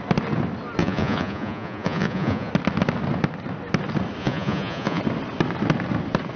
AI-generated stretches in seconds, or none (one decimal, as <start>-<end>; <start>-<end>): 0.8-2.5; 4.2-5.0